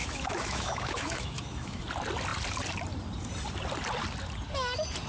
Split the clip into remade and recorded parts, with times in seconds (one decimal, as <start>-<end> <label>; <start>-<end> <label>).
0.0-1.8 remade; 1.8-5.1 recorded